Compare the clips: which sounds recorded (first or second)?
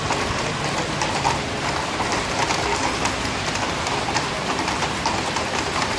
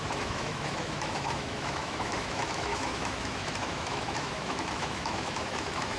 first